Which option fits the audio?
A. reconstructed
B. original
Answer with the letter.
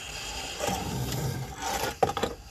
B